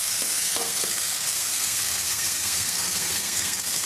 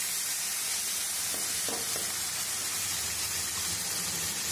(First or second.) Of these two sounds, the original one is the second